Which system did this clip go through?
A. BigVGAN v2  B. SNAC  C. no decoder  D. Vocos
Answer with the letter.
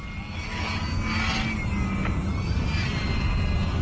C